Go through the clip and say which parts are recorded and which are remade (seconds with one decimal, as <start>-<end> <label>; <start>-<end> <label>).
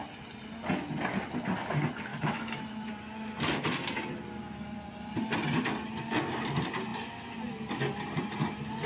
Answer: 0.0-2.1 recorded; 2.1-2.9 remade; 2.9-8.9 recorded